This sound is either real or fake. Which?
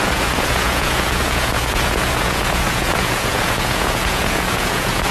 fake